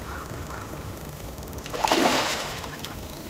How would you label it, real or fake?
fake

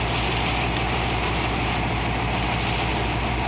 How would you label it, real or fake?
real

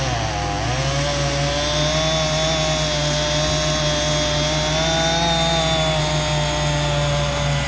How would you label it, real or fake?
real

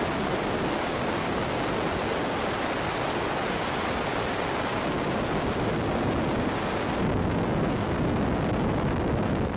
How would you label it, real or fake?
real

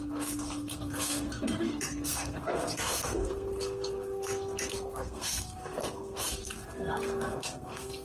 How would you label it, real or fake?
fake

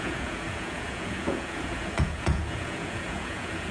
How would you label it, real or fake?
fake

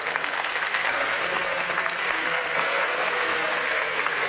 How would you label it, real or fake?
fake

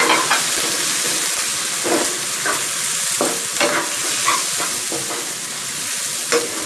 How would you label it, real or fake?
real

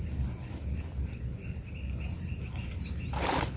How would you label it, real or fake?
real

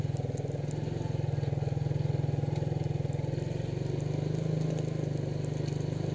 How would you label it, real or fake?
real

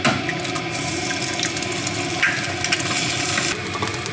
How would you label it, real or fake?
real